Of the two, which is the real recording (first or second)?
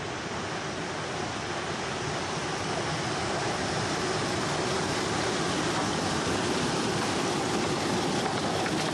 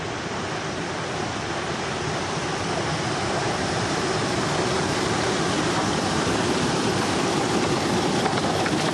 first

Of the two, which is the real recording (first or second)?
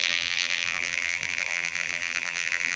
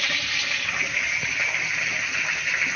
second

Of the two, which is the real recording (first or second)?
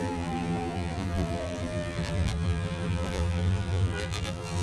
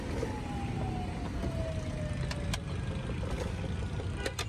second